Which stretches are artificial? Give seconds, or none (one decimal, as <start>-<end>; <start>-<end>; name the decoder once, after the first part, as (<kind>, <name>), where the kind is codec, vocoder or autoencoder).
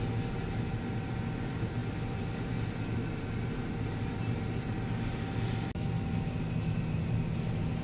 none